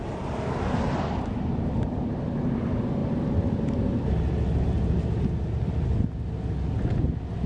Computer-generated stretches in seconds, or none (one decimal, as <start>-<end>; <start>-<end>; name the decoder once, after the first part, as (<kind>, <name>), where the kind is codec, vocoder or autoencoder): none